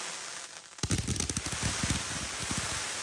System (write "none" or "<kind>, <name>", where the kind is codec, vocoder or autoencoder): none